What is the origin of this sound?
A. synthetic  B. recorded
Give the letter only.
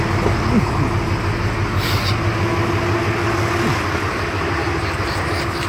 B